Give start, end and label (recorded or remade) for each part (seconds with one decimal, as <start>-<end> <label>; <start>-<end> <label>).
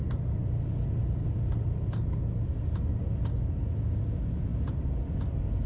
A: 0.0-3.4 remade; 3.4-4.5 recorded; 4.5-5.1 remade; 5.1-5.7 recorded